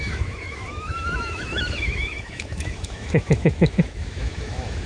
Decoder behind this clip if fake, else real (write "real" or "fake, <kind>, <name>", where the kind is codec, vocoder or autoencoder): fake, autoencoder, DAC-VAE